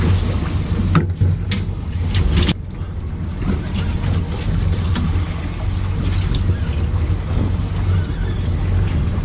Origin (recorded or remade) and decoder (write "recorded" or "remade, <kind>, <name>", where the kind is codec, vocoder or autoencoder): recorded